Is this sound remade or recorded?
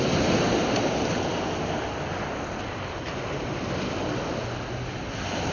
recorded